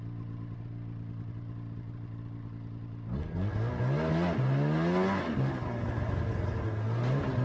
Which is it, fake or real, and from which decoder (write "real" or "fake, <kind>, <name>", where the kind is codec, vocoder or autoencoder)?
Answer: real